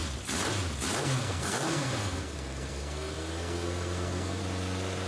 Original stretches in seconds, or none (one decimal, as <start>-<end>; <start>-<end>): 0.0-1.0; 4.4-5.1